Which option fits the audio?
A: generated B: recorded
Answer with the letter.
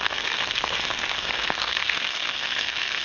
A